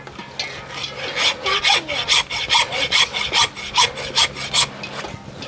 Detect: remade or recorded recorded